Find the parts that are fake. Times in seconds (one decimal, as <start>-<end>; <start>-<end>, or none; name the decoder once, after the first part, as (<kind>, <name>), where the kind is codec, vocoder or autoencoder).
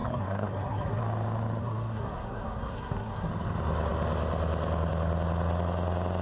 0.0-1.0 (codec, SNAC); 1.6-3.3